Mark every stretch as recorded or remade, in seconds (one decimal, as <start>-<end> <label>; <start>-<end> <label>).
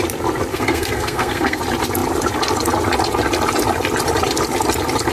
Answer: 0.0-0.5 recorded; 0.5-1.6 remade; 1.6-5.1 recorded